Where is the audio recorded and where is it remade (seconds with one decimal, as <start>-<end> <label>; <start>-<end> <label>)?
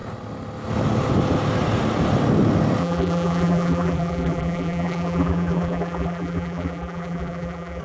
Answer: 0.0-2.8 recorded; 2.8-7.8 remade